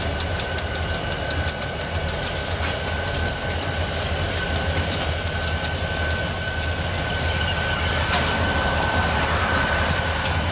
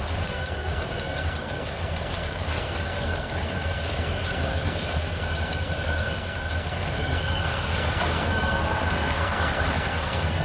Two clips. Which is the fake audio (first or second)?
second